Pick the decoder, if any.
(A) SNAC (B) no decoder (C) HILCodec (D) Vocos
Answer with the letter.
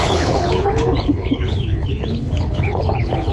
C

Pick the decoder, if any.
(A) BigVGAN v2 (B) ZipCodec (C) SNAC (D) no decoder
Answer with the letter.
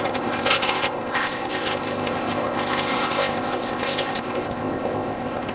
B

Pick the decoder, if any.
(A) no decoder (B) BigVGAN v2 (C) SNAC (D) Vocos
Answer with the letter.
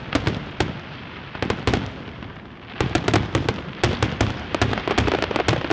A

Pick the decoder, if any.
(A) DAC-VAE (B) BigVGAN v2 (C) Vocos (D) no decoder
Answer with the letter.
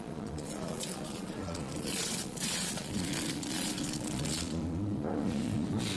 C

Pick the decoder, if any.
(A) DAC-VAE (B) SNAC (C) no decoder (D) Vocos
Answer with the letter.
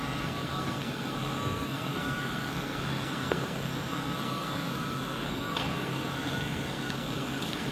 B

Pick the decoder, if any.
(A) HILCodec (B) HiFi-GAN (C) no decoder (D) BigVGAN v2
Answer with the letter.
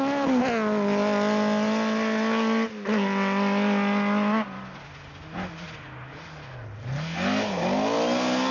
C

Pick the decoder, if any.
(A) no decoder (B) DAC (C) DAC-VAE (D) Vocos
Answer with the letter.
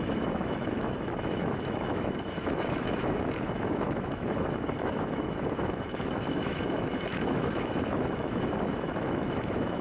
C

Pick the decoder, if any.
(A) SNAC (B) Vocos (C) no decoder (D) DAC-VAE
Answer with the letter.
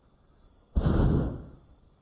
C